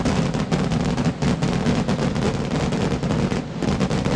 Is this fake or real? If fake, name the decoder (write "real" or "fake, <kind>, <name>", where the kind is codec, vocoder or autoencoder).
real